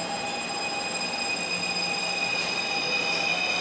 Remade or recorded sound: recorded